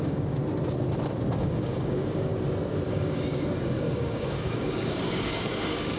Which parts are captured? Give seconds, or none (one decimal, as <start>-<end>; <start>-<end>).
0.4-1.3; 2.3-2.9